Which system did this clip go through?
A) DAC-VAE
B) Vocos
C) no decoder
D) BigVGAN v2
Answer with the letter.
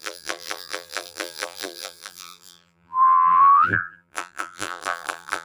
D